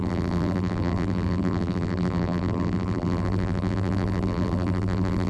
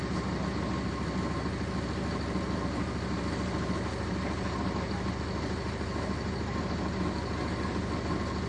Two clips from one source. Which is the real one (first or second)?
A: second